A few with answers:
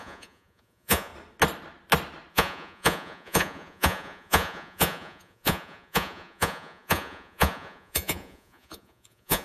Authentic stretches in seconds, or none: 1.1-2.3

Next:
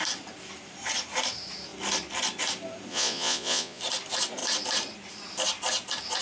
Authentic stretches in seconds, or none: 0.0-2.9; 3.8-6.2